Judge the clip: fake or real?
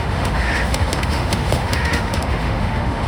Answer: fake